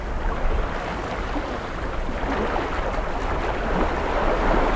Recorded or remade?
recorded